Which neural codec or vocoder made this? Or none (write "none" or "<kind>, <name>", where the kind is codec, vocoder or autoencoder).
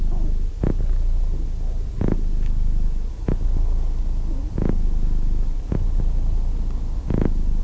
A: none